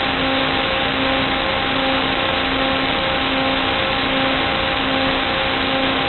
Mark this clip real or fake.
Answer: real